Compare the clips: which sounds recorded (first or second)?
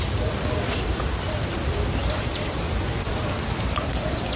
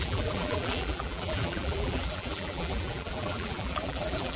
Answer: first